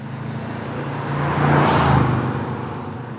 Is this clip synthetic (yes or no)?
no